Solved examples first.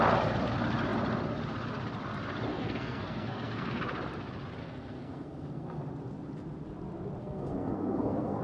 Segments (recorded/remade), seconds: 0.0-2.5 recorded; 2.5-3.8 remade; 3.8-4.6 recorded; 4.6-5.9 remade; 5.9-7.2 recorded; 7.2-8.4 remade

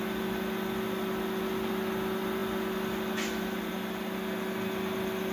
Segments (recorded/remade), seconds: 0.0-5.3 recorded

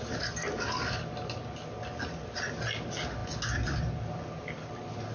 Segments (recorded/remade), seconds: 0.0-5.1 recorded

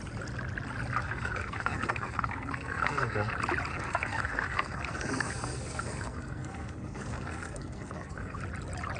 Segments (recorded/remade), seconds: 0.0-1.0 recorded; 1.0-3.3 remade; 3.3-3.7 recorded; 3.7-8.4 remade; 8.4-9.0 recorded

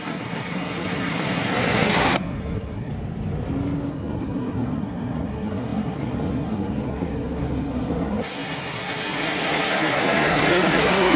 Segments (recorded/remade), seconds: 0.0-2.9 remade; 2.9-3.9 recorded; 3.9-11.2 remade

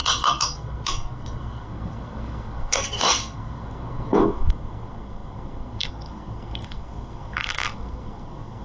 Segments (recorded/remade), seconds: 0.0-8.6 remade